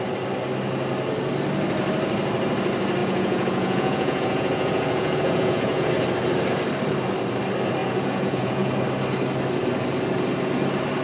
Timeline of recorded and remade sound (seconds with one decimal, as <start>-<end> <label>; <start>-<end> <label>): 0.0-3.0 recorded; 3.0-5.9 remade; 5.9-7.8 recorded; 7.8-8.7 remade; 8.7-11.0 recorded